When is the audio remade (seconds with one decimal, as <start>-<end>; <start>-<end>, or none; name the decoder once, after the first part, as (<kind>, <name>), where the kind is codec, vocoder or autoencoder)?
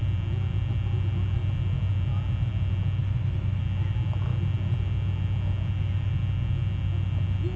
3.0-3.6 (autoencoder, DAC-VAE)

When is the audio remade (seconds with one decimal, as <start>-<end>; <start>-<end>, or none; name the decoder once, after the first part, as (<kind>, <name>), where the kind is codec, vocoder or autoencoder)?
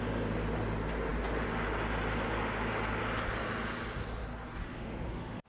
4.6-5.5 (autoencoder, DAC-VAE)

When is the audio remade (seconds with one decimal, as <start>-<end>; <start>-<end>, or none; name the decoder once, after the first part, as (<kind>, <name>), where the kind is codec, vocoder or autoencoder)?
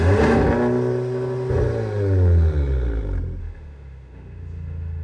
0.0-0.4 (autoencoder, DAC-VAE); 3.4-5.0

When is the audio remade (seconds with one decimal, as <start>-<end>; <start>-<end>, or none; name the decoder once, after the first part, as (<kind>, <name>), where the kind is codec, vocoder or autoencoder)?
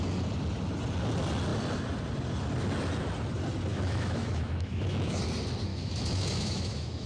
3.7-5.2 (autoencoder, DAC-VAE); 5.7-7.1